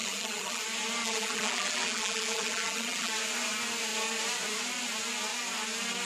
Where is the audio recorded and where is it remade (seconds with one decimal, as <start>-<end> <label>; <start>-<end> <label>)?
0.0-0.6 remade; 0.6-1.0 recorded; 1.0-3.1 remade; 3.1-6.1 recorded